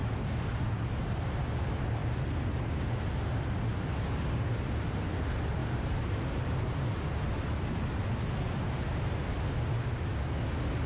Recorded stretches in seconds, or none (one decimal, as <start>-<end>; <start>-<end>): 0.0-5.6; 6.6-10.9